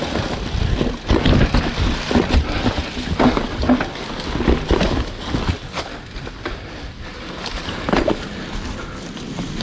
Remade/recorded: recorded